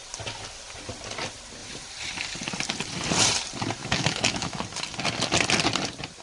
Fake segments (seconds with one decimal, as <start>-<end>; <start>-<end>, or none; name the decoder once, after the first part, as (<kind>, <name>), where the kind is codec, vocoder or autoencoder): 3.8-4.6 (autoencoder, DAC-VAE)

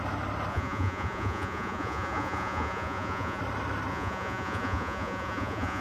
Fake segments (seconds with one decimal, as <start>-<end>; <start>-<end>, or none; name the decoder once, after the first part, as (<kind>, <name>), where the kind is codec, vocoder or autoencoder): 0.5-3.4 (vocoder, Vocos); 3.9-5.8

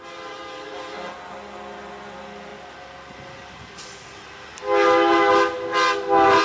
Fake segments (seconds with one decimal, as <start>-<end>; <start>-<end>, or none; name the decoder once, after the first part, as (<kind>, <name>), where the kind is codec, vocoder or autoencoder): none

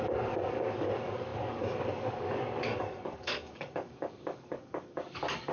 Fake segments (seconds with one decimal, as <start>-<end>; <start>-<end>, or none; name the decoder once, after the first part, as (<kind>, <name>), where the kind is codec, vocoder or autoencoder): 0.0-5.5 (codec, DAC)

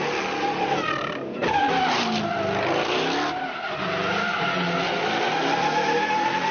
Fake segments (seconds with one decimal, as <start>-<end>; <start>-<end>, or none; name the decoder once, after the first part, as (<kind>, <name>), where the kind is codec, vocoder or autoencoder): none